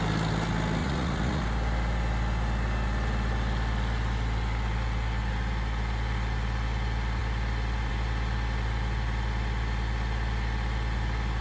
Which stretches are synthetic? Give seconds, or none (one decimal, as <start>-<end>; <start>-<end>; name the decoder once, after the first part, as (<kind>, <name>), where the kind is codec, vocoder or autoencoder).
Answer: 0.8-1.4 (vocoder, Vocos)